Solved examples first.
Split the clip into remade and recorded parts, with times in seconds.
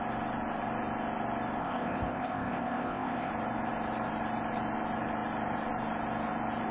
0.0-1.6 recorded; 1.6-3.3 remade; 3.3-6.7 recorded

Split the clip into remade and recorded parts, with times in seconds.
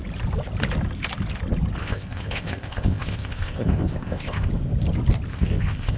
0.0-1.8 recorded; 1.8-4.5 remade; 4.5-5.3 recorded; 5.3-6.0 remade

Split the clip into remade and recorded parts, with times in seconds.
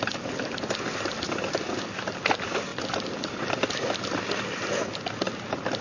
0.0-5.8 recorded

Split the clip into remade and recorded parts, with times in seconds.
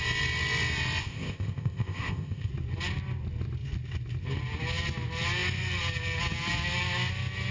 0.0-1.0 recorded; 1.0-2.5 remade; 2.5-7.5 recorded